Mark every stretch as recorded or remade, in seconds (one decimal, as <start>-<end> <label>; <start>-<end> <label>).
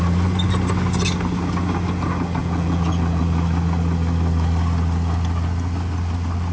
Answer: 0.0-2.4 recorded; 2.4-3.2 remade; 3.2-6.5 recorded